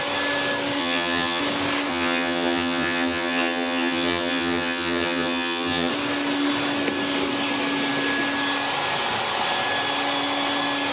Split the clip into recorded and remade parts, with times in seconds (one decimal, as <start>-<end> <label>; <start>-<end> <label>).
0.0-0.8 recorded; 0.8-1.4 remade; 1.4-1.9 recorded; 1.9-5.9 remade; 5.9-10.9 recorded